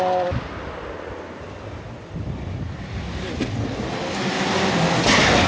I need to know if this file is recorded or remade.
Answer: recorded